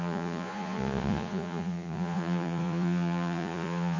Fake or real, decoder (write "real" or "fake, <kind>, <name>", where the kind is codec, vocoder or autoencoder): fake, vocoder, Vocos